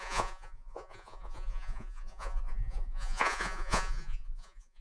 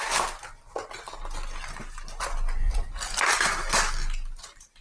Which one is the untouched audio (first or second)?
second